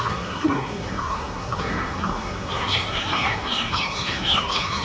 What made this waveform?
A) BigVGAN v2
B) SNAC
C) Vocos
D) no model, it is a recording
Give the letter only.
B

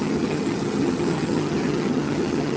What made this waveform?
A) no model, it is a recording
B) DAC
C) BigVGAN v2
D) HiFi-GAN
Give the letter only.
D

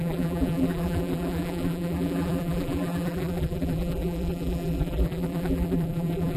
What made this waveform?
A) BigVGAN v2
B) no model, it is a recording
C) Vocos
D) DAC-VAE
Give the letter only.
A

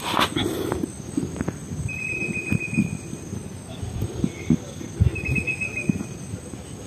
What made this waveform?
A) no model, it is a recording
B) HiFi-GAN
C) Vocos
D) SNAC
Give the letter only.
A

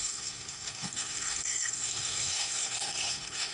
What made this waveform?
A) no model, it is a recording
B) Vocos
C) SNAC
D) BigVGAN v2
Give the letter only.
C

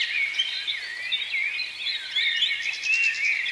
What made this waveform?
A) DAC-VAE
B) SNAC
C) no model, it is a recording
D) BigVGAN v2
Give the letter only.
C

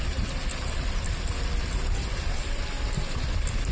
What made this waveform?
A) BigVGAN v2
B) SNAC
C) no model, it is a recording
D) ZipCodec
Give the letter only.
C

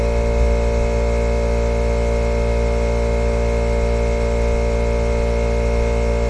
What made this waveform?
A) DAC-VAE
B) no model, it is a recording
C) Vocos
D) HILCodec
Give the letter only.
B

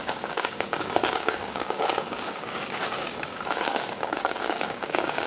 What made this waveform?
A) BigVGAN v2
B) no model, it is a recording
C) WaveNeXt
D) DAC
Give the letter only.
D